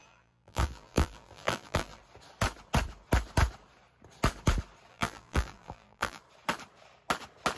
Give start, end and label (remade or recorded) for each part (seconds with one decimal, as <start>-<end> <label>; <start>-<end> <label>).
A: 0.0-2.0 remade; 2.0-4.9 recorded; 4.9-6.2 remade; 6.2-7.6 recorded